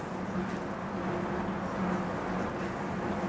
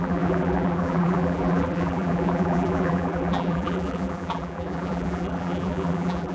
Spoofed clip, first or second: second